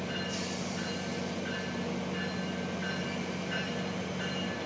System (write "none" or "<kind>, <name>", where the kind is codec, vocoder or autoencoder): none